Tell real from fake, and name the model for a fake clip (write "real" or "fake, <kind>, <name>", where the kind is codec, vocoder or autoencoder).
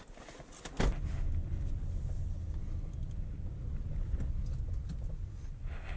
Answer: real